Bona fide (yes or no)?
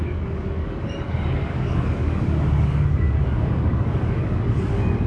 no